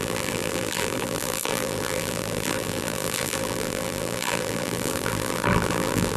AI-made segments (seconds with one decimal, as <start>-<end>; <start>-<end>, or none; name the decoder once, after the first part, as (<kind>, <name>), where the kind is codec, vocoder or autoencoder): 0.0-6.2 (vocoder, BigVGAN v2)